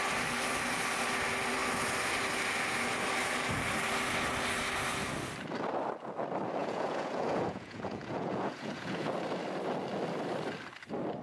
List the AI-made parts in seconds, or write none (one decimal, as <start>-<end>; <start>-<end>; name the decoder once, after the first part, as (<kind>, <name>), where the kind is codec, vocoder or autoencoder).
6.6-9.1 (vocoder, Vocos)